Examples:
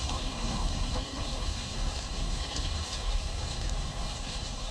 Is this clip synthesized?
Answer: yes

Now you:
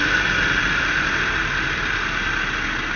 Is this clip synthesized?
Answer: no